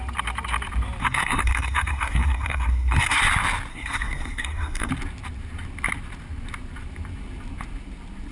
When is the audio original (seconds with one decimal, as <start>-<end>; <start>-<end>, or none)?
0.0-1.0; 3.2-3.7; 4.9-8.3